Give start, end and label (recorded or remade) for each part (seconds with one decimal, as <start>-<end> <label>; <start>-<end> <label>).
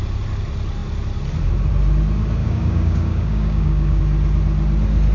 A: 0.0-2.4 recorded; 2.4-4.0 remade; 4.0-5.1 recorded